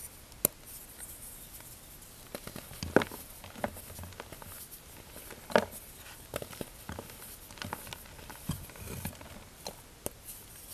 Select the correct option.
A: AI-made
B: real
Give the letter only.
B